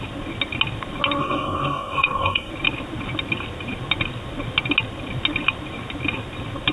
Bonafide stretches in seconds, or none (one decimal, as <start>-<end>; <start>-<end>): 0.0-1.2; 2.5-6.7

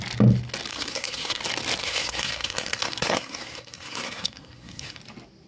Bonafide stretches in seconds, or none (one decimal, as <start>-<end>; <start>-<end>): 0.0-0.7; 1.4-1.8; 5.0-5.5